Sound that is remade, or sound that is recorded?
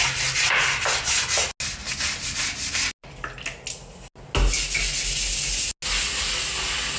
recorded